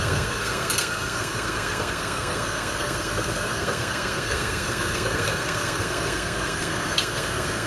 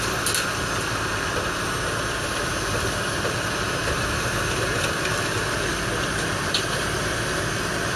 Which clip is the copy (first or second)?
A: first